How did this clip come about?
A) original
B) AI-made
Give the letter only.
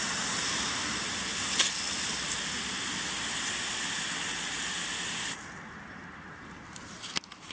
A